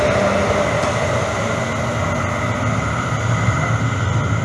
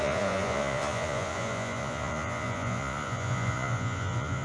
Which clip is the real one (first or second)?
first